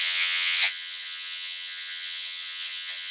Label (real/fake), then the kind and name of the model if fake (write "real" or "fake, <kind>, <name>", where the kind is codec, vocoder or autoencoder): fake, vocoder, HiFi-GAN